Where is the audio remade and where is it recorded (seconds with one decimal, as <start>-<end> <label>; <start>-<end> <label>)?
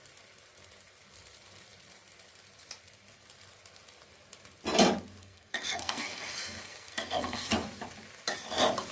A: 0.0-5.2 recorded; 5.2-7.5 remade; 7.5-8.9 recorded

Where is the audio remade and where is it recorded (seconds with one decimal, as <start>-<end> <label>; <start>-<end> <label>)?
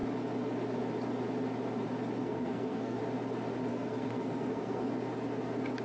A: 0.0-2.2 recorded; 2.2-3.0 remade; 3.0-3.7 recorded; 3.7-4.9 remade; 4.9-5.8 recorded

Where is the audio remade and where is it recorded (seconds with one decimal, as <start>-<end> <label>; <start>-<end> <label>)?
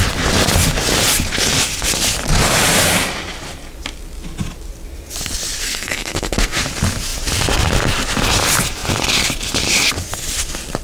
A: 0.0-5.6 recorded; 5.6-6.6 remade; 6.6-10.8 recorded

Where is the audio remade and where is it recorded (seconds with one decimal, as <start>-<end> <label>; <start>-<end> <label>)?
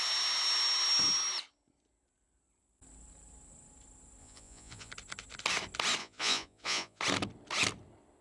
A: 0.0-4.2 recorded; 4.2-4.9 remade; 4.9-6.0 recorded; 6.0-7.0 remade; 7.0-8.2 recorded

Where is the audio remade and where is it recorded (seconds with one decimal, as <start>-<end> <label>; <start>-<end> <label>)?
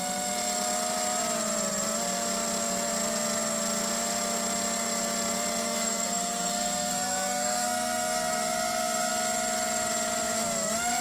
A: 0.0-5.6 recorded; 5.6-9.1 remade; 9.1-11.0 recorded